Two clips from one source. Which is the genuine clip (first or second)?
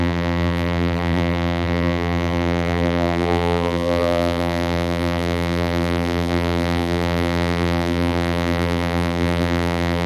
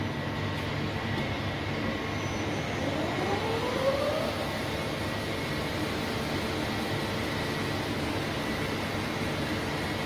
second